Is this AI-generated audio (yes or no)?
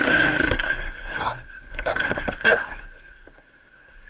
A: yes